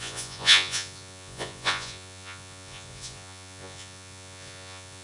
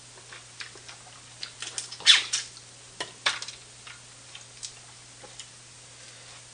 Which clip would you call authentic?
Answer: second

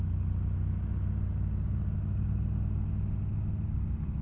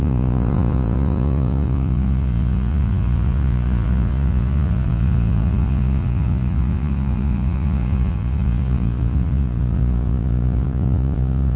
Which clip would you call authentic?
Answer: first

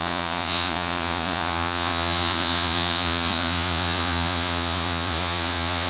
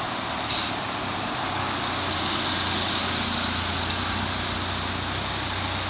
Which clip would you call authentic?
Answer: second